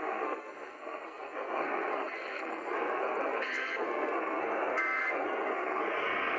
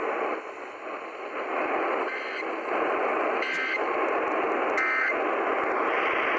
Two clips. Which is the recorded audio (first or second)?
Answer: second